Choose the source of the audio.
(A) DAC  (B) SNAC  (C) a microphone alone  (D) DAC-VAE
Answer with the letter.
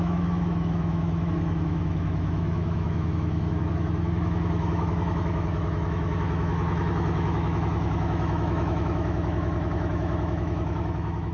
D